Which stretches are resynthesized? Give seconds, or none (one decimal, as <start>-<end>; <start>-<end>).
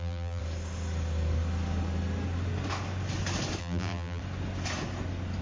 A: 0.0-0.4; 3.6-4.2